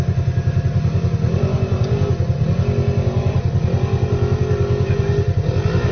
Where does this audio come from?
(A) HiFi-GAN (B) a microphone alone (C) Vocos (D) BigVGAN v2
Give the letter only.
B